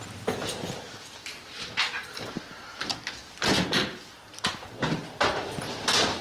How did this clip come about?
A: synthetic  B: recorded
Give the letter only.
B